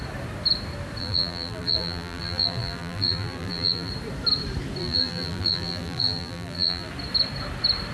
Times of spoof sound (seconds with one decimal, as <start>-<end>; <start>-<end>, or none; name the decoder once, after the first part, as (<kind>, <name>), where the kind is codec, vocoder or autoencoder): 1.0-3.9 (vocoder, BigVGAN v2); 4.8-6.9